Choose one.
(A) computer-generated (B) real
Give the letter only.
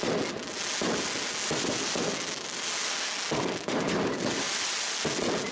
B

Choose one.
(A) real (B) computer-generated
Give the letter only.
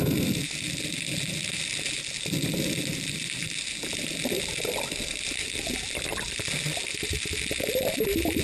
A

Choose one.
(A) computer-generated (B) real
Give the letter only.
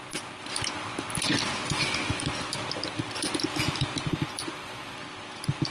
B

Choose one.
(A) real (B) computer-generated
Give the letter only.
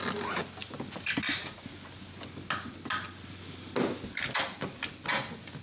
A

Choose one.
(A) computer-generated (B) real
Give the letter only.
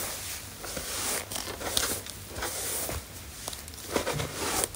B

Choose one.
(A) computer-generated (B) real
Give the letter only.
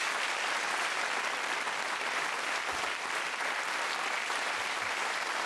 A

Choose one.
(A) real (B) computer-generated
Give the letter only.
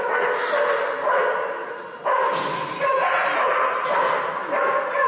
A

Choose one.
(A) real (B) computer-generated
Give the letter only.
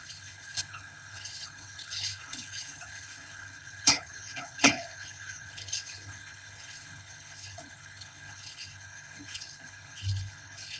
B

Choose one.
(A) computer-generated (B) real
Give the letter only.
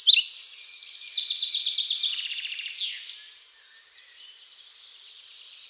B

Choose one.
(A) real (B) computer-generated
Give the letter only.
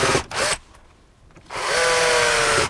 A